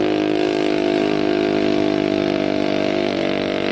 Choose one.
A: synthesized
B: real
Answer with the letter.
B